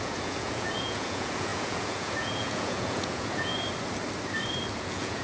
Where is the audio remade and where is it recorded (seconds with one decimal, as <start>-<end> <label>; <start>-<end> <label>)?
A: 0.0-3.5 remade; 3.5-4.8 recorded; 4.8-5.2 remade